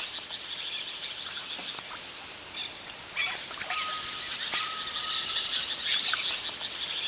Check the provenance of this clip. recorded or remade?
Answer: recorded